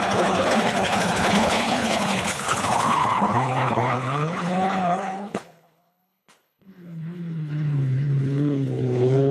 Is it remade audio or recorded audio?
remade